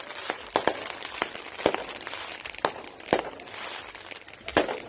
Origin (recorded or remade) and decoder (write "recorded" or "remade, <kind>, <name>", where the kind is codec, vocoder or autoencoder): recorded